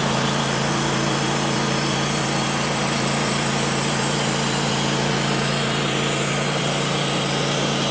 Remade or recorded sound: remade